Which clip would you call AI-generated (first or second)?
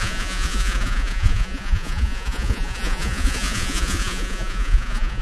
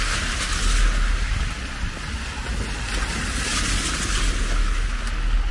first